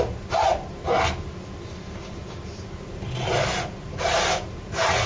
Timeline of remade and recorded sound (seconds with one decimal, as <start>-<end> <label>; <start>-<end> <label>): 0.0-5.1 recorded